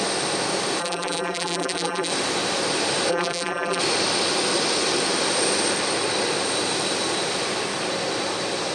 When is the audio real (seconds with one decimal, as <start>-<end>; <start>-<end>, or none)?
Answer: 0.0-0.8; 2.1-3.1; 3.8-8.7